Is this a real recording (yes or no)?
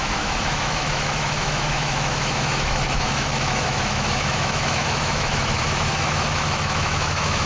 no